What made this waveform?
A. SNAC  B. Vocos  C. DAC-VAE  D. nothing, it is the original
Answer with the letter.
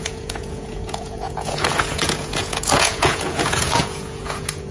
B